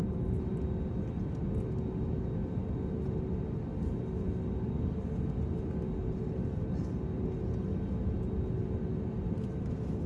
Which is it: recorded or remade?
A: recorded